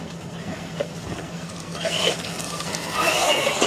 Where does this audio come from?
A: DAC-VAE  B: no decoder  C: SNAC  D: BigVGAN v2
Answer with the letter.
C